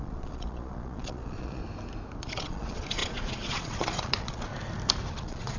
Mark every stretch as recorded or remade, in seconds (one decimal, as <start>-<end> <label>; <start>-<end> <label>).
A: 0.0-1.6 remade; 1.6-2.2 recorded; 2.2-4.5 remade; 4.5-5.1 recorded; 5.1-5.6 remade